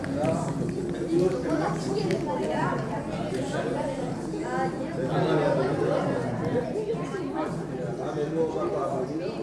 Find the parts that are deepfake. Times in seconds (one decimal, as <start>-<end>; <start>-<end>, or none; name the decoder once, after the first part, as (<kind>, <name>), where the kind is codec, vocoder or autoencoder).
none